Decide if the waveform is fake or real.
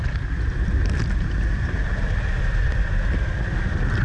real